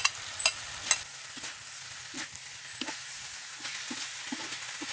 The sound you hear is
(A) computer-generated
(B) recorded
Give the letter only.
B